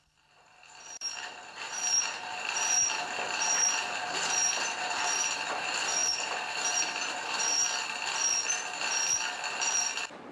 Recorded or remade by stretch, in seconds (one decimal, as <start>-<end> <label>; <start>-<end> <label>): 0.0-7.6 remade; 7.6-10.3 recorded